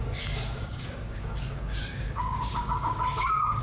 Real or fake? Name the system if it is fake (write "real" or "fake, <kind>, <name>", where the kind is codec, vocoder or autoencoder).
fake, codec, DAC